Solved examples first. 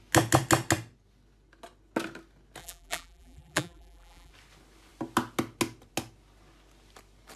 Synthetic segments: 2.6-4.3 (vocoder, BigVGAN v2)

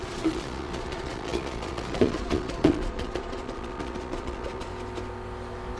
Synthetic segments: 0.0-4.7 (vocoder, Vocos)